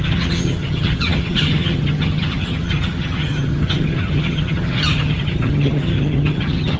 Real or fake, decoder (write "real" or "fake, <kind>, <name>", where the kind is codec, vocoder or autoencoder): fake, vocoder, HiFi-GAN